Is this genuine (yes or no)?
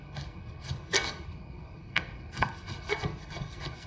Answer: no